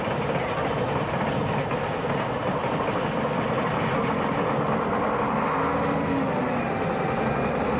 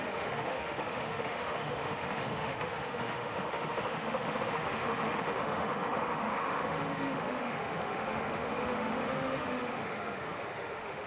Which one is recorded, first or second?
first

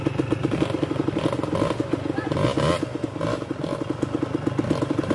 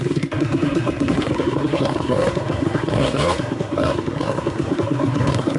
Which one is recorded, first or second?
first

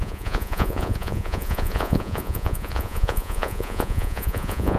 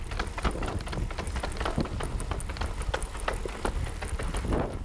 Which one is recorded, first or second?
second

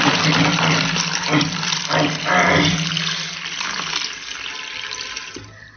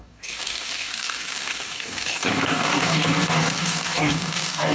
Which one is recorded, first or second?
first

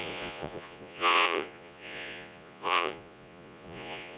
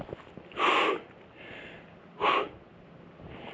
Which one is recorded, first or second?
second